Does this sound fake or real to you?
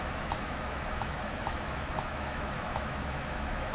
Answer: fake